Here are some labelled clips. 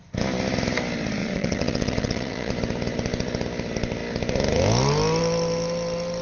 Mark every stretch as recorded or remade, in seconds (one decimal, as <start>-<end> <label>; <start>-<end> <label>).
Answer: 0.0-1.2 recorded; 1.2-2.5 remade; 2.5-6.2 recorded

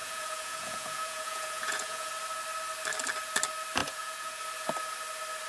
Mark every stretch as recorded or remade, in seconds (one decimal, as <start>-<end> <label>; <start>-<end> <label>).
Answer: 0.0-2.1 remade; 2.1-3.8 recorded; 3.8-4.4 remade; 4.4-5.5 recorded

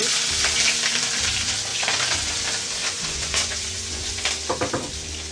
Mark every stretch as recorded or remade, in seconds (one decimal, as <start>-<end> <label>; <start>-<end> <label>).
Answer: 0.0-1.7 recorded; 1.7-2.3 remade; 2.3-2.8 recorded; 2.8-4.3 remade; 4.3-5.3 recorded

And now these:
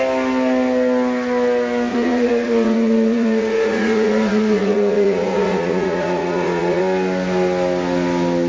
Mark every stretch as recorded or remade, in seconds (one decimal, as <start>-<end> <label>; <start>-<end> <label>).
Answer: 0.0-1.9 recorded; 1.9-6.8 remade; 6.8-8.5 recorded